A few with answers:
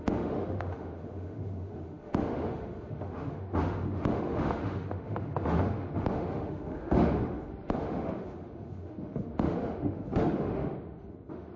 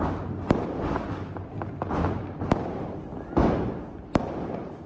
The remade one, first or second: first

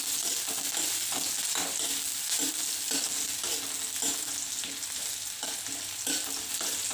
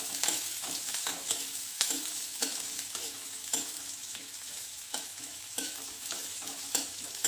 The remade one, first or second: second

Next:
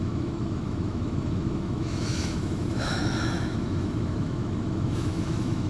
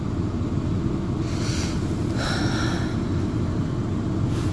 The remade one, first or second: first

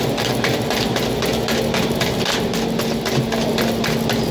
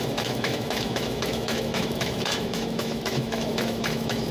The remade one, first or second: second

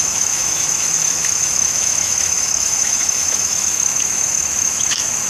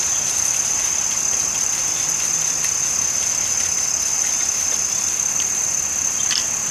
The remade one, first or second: first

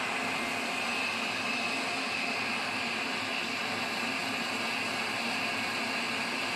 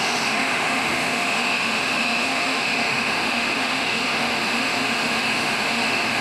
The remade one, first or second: second